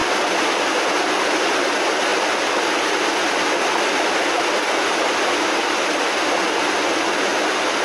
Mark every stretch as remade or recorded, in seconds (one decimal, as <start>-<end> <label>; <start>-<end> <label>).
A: 0.0-7.8 recorded